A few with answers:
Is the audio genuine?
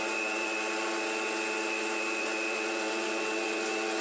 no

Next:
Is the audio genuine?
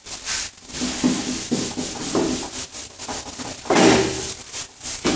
yes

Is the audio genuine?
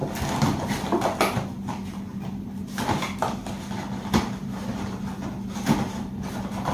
yes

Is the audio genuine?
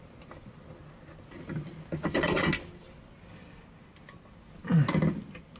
yes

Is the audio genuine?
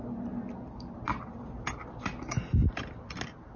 yes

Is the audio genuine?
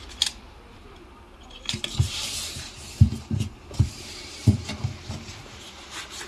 no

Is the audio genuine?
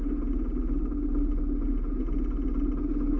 yes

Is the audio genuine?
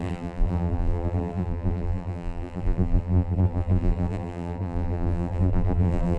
no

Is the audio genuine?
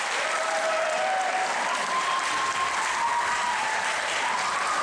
yes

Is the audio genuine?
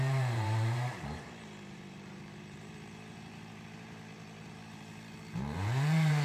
no